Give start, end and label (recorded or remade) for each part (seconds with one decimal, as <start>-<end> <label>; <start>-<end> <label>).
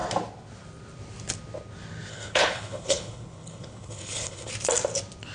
0.0-2.1 recorded; 2.1-4.5 remade; 4.5-5.3 recorded